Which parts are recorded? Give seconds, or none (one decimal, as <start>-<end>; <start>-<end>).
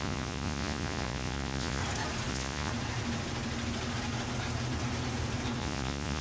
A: 1.8-2.3; 2.7-5.6